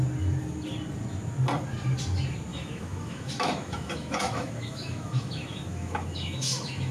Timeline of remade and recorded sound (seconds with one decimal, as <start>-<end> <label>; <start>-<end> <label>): 0.0-2.5 recorded; 2.5-6.9 remade